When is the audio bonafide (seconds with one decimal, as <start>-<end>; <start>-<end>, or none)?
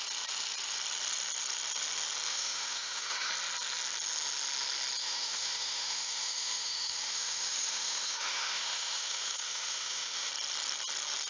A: 0.0-2.3; 3.3-5.0; 10.3-11.3